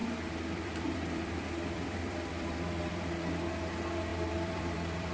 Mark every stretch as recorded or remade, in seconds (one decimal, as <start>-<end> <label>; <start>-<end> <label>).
0.0-3.1 remade; 3.1-4.1 recorded; 4.1-5.1 remade